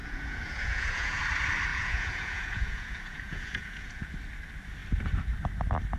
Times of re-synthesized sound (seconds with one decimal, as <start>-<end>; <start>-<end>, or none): 0.0-1.2; 1.7-4.1